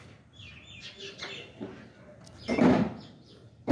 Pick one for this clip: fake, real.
real